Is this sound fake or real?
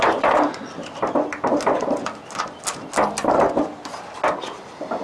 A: real